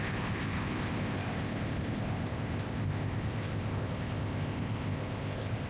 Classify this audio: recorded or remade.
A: remade